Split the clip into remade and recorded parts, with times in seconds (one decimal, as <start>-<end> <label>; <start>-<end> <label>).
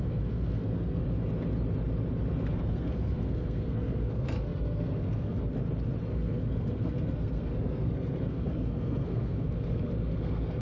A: 0.0-1.0 remade; 1.0-2.5 recorded; 2.5-5.5 remade; 5.5-6.1 recorded; 6.1-10.6 remade